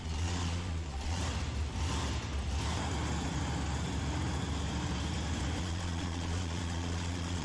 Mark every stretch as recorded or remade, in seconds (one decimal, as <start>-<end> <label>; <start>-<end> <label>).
0.0-1.2 remade; 1.2-5.6 recorded; 5.6-7.4 remade